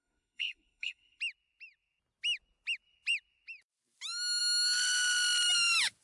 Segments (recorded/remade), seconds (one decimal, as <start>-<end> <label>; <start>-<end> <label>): 0.0-1.2 remade; 1.2-6.0 recorded